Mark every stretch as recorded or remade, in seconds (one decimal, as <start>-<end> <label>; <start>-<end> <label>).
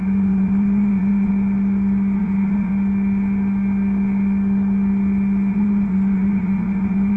0.0-1.3 remade; 1.3-2.2 recorded; 2.2-2.7 remade; 2.7-5.5 recorded; 5.5-7.2 remade